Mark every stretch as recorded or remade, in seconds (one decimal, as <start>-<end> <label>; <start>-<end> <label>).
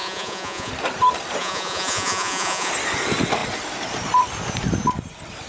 0.0-0.7 remade; 0.7-1.4 recorded; 1.4-2.7 remade; 2.7-5.5 recorded